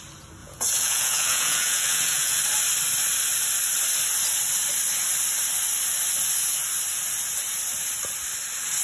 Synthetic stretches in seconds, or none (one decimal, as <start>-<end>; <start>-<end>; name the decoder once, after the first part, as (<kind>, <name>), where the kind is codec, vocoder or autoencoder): 0.4-2.4 (vocoder, Vocos)